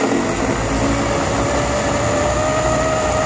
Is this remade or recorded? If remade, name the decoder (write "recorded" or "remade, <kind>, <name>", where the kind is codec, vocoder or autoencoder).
recorded